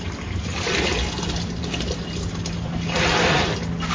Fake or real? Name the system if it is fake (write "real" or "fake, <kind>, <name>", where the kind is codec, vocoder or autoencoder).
real